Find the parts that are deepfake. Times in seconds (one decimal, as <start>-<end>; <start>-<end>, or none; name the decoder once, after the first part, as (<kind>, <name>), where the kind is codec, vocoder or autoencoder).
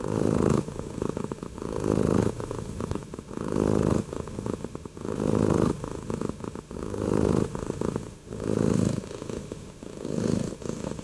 0.0-11.0 (autoencoder, DAC-VAE)